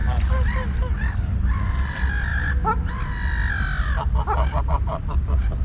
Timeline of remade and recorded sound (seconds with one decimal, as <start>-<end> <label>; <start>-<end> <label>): 0.0-5.6 recorded